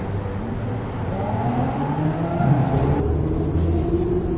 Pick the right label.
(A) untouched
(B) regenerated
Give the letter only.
A